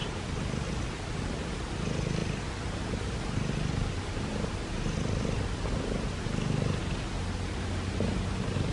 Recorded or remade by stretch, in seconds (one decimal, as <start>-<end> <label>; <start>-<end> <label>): 0.0-8.7 recorded